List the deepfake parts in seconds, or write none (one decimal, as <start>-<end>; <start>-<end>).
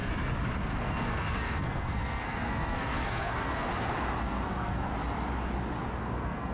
0.6-3.7; 4.2-4.9; 6.0-6.5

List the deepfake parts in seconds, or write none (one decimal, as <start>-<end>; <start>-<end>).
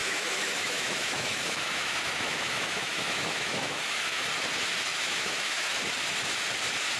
0.0-4.2; 4.9-5.8